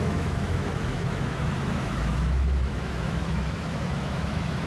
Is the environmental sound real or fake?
fake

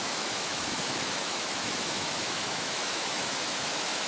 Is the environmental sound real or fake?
fake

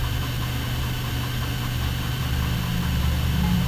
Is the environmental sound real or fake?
real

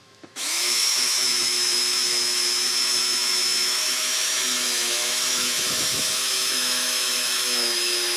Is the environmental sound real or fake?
fake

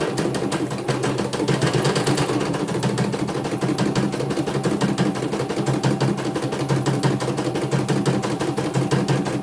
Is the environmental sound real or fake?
real